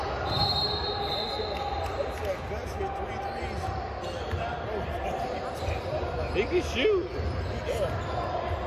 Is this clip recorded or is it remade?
recorded